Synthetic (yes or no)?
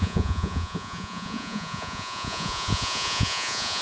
yes